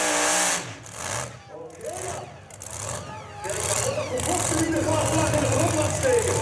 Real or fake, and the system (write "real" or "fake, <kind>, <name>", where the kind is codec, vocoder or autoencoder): real